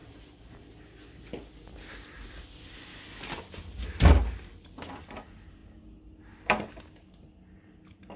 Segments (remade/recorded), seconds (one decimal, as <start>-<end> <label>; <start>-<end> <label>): 0.0-8.2 recorded